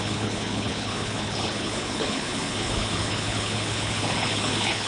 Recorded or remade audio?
remade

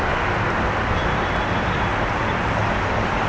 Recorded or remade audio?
recorded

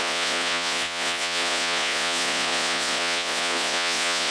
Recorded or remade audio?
remade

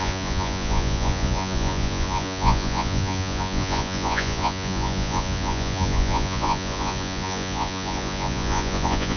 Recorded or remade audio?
remade